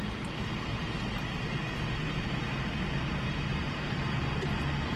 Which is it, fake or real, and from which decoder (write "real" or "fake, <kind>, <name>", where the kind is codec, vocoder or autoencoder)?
real